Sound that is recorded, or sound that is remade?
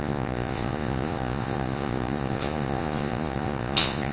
remade